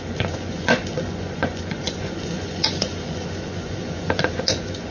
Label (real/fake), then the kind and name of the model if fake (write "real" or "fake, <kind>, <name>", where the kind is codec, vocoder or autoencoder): fake, vocoder, Vocos